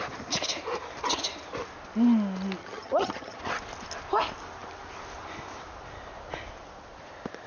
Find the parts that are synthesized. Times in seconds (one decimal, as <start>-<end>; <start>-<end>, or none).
2.6-3.4

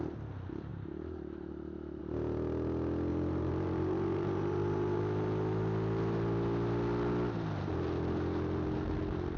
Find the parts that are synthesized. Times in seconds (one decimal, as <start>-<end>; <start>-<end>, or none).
0.7-2.0; 3.1-5.0

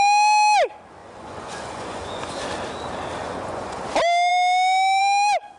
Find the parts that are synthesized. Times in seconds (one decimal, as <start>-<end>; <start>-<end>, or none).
1.0-2.4; 3.2-3.8

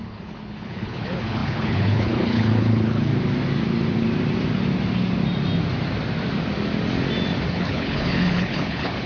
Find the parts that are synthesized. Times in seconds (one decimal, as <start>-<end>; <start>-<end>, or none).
0.0-3.1; 7.5-9.1

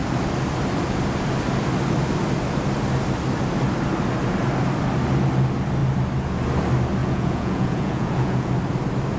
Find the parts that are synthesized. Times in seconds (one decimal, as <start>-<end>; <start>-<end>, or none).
7.0-8.5

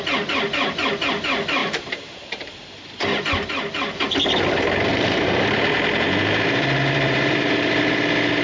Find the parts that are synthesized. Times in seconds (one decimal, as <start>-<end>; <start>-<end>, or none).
1.6-3.2; 4.9-8.0

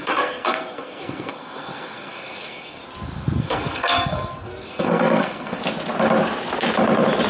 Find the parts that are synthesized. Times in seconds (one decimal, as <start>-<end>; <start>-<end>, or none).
0.0-2.8; 3.4-5.6